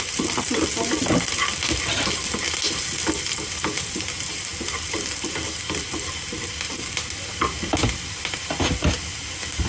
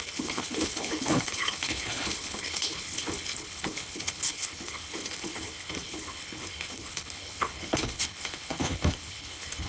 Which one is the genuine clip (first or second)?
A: first